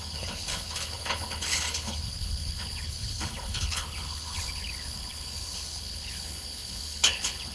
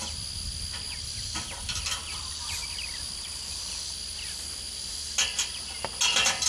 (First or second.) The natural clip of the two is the second